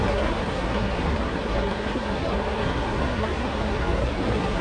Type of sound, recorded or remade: remade